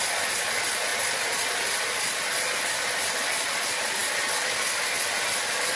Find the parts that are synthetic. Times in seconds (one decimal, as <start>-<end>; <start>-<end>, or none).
none